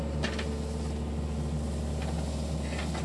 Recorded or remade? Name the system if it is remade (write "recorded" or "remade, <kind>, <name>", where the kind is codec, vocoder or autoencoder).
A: recorded